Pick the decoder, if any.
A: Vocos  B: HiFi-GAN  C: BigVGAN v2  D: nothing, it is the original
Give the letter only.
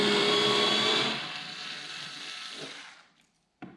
C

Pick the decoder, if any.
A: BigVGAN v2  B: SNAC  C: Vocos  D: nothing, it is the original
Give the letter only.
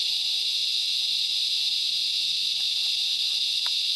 A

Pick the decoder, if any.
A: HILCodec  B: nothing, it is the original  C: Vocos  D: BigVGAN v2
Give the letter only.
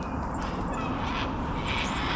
B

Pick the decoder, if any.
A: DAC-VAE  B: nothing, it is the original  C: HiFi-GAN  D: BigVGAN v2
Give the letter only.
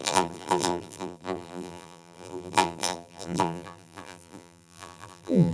D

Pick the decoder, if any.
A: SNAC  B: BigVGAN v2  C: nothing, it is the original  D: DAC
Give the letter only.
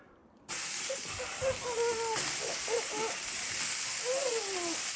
C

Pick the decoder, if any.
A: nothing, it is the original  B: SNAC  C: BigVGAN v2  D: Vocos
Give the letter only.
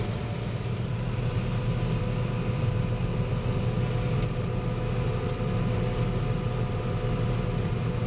A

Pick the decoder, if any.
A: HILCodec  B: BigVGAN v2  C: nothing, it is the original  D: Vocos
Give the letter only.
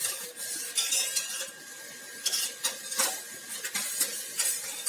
C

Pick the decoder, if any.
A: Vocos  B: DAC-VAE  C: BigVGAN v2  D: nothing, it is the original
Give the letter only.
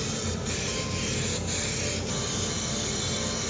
D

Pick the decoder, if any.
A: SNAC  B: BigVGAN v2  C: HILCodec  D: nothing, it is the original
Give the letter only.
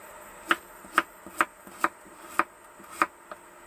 D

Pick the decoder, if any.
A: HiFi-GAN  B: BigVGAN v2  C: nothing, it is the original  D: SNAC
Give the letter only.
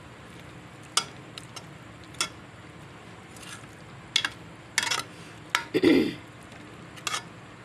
C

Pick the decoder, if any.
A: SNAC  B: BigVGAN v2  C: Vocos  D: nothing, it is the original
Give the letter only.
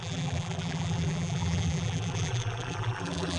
B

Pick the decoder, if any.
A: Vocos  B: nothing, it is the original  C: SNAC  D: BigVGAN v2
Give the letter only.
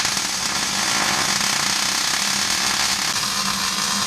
B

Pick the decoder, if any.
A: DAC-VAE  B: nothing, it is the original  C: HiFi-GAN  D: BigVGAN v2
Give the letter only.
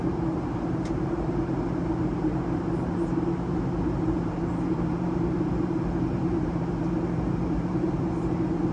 D